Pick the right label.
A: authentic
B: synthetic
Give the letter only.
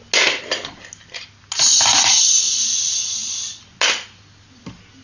A